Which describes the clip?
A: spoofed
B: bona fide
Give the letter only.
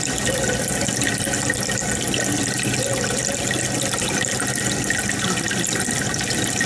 B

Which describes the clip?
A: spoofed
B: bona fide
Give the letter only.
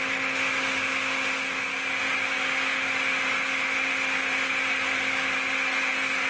B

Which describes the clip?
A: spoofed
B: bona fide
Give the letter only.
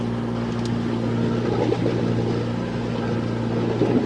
B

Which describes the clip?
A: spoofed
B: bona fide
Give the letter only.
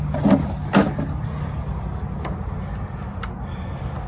B